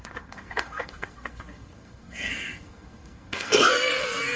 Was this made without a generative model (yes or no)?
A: no